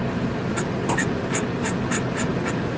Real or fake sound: real